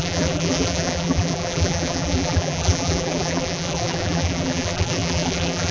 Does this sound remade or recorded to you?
remade